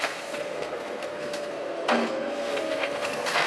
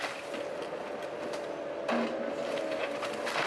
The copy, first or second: first